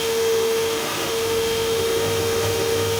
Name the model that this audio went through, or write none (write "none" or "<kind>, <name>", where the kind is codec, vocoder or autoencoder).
autoencoder, DAC-VAE